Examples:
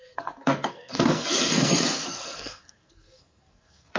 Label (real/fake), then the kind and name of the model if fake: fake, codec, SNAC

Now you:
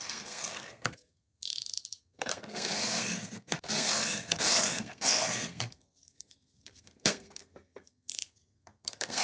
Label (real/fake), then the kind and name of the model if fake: fake, codec, SNAC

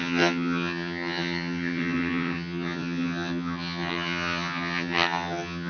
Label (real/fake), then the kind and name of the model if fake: fake, vocoder, HiFi-GAN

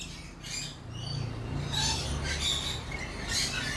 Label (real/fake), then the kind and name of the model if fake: real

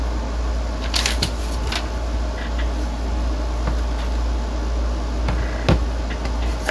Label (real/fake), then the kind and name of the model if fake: real